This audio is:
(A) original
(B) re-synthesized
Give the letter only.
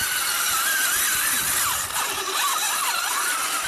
A